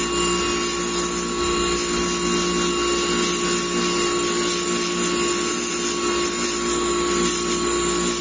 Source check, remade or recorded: recorded